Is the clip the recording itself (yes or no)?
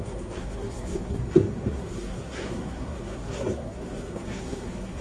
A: no